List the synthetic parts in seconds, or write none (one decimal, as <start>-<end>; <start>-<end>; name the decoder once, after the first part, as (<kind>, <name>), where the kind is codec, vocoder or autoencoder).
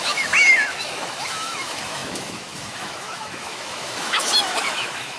0.0-5.2 (autoencoder, DAC-VAE)